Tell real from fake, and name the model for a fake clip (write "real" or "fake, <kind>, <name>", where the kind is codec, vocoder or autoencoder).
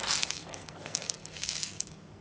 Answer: fake, codec, SNAC